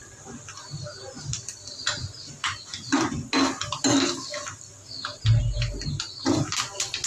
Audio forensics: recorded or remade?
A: recorded